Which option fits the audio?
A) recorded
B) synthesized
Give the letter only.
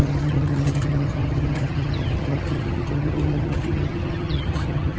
B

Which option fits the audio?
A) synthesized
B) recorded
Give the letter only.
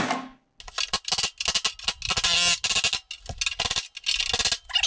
B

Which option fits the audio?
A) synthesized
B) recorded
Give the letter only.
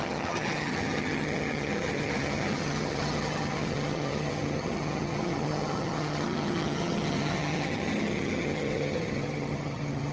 A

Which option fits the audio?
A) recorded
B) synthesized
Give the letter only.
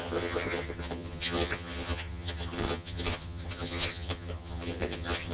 B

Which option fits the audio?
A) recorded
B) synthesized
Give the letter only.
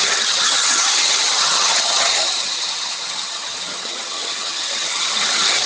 B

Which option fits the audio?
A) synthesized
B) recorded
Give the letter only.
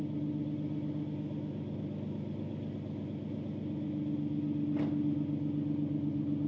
B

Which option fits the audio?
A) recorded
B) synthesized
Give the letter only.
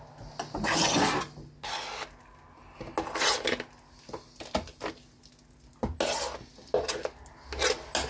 A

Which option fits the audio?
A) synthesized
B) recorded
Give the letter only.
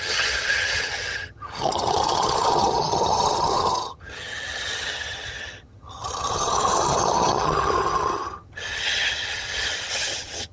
A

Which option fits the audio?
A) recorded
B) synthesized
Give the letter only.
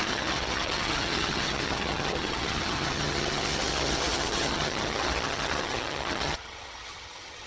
B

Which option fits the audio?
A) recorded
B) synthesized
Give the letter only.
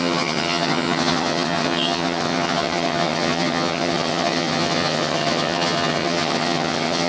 B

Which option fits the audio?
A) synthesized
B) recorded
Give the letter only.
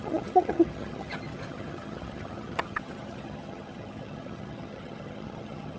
A